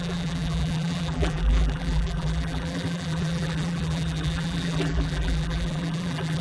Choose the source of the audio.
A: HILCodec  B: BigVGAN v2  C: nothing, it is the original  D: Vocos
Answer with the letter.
B